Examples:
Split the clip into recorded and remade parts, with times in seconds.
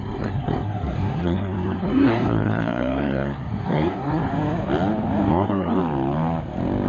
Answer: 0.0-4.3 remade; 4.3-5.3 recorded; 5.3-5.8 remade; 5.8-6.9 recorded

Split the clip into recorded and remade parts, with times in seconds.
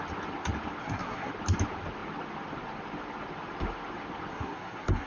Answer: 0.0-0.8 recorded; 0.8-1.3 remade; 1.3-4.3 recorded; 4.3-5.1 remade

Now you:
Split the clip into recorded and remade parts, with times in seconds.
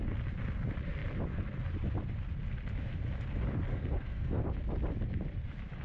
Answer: 0.0-3.7 recorded; 3.7-4.4 remade; 4.4-5.8 recorded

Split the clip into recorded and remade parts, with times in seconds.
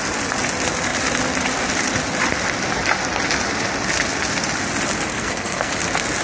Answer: 0.0-5.1 recorded; 5.1-5.7 remade; 5.7-6.2 recorded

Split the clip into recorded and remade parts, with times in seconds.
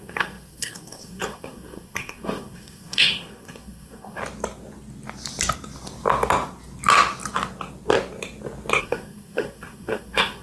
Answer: 0.0-4.2 remade; 4.2-8.8 recorded; 8.8-10.4 remade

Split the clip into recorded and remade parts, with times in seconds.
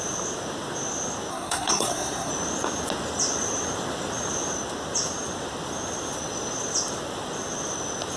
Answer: 0.0-1.3 recorded; 1.3-2.3 remade; 2.3-8.2 recorded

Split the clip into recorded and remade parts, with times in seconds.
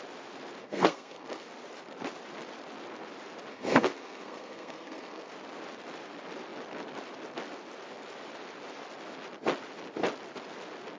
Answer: 0.0-0.6 recorded; 0.6-1.5 remade; 1.5-3.5 recorded; 3.5-5.3 remade; 5.3-11.0 recorded